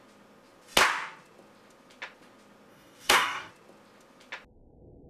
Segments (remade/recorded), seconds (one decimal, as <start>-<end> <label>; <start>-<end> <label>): 0.0-2.7 recorded; 2.7-3.5 remade; 3.5-5.1 recorded